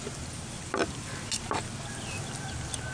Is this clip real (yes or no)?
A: yes